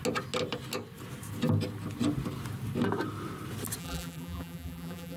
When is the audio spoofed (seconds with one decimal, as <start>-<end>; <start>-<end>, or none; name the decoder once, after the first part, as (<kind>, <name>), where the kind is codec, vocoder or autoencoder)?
3.8-5.2 (vocoder, BigVGAN v2)